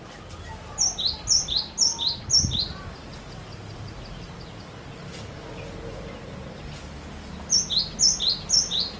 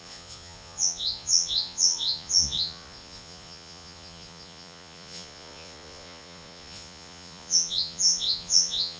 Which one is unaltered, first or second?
first